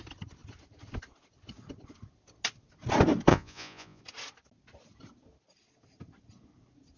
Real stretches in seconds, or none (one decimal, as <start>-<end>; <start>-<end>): 0.0-3.3; 4.0-7.0